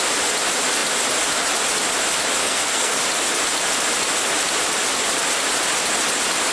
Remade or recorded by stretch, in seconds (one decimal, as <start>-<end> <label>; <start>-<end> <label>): 0.0-2.4 recorded; 2.4-3.0 remade; 3.0-6.5 recorded